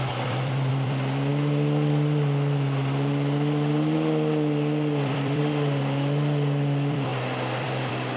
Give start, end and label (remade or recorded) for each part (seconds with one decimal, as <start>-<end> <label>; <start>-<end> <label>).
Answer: 0.0-8.2 remade